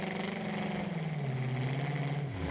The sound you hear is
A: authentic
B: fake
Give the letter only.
A